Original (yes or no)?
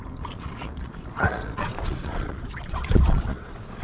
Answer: no